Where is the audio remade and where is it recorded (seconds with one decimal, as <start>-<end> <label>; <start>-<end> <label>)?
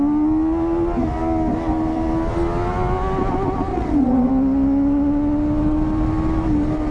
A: 0.0-3.7 recorded; 3.7-4.3 remade; 4.3-6.9 recorded